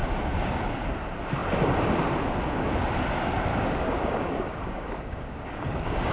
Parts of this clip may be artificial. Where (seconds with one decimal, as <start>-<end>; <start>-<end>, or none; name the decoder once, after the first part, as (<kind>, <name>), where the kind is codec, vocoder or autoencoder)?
3.5-6.1 (codec, DAC)